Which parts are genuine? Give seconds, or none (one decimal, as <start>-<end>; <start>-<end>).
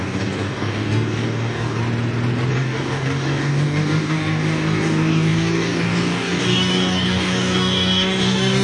1.8-2.5